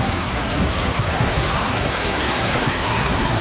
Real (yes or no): no